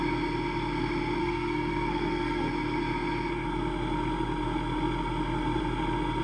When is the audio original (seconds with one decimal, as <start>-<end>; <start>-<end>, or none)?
0.0-1.2; 2.5-6.2